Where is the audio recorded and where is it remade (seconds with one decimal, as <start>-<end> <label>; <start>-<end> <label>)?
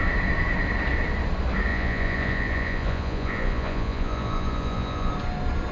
0.0-1.7 recorded; 1.7-5.1 remade; 5.1-5.7 recorded